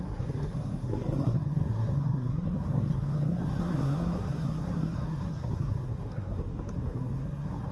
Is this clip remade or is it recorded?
remade